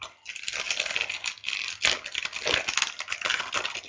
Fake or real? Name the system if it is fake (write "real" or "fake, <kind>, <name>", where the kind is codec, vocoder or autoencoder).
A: real